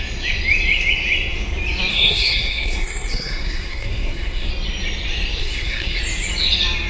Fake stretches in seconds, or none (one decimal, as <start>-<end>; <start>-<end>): 1.9-4.5; 5.4-6.0